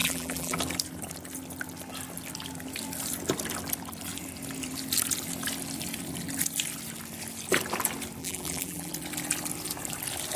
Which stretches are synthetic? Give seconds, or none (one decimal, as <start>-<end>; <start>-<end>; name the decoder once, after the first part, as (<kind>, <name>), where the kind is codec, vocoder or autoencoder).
0.0-0.6 (vocoder, BigVGAN v2); 8.2-8.9